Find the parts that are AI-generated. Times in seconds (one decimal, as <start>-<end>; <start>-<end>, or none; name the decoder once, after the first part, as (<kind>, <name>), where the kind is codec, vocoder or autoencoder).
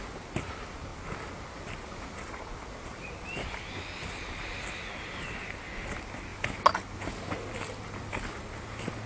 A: none